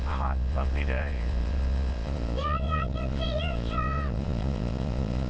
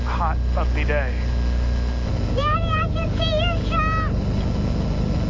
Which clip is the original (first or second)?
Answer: second